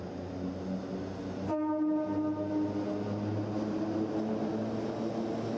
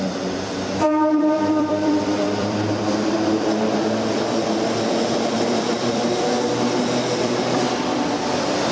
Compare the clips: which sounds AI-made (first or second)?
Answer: second